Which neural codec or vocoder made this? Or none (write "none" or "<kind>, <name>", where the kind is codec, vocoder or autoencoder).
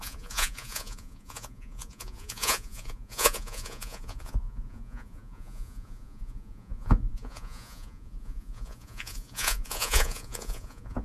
vocoder, Vocos